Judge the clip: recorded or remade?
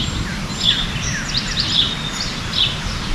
recorded